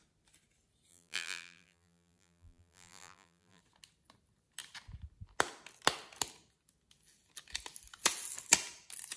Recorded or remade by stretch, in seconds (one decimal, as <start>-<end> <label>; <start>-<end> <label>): 0.0-0.9 recorded; 0.9-3.6 remade; 3.6-9.2 recorded